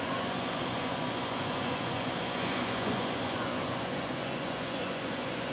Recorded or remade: remade